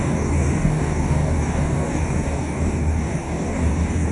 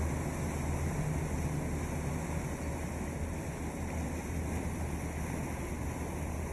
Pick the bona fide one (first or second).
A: second